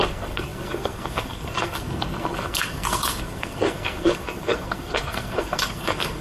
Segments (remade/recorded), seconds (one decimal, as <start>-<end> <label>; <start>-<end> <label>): 0.0-6.2 remade